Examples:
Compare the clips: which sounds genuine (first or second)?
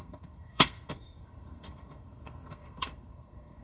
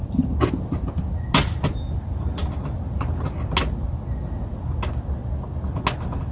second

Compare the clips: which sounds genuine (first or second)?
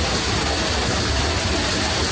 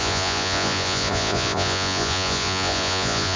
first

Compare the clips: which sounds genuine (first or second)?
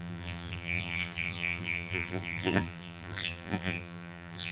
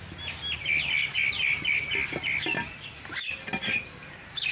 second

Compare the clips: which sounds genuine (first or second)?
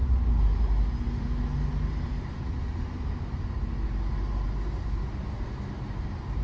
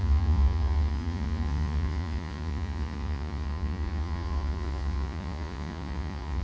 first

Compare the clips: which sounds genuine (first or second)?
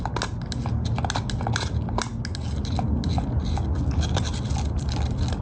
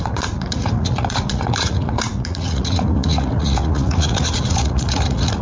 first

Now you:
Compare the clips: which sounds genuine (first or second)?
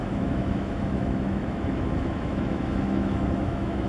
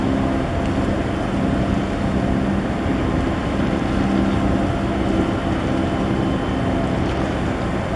second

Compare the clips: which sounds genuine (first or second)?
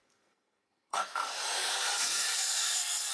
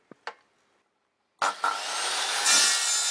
second